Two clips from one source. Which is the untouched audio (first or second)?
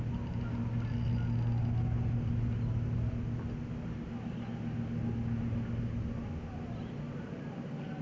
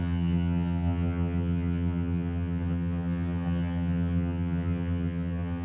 first